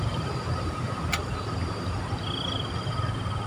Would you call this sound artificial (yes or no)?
no